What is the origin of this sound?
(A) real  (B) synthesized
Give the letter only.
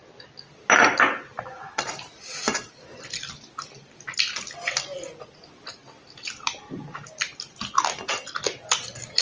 A